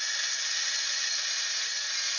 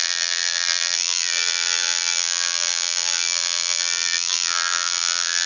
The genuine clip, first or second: first